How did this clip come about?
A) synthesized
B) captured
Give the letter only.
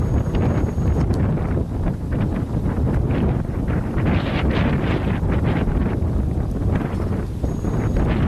B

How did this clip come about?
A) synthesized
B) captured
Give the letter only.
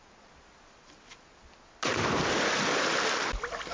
B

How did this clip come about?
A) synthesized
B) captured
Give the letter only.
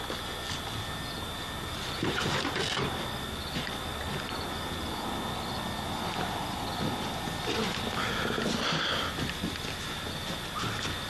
B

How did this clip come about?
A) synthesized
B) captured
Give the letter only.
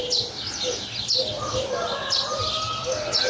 B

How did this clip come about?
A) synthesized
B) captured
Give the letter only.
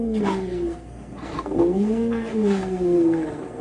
A